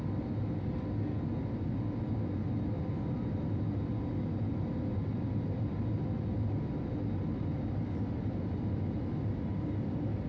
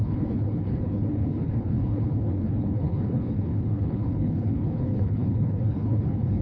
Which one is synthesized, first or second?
second